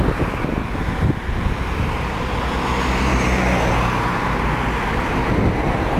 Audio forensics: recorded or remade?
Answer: recorded